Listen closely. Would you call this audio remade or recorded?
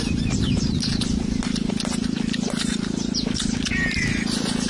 remade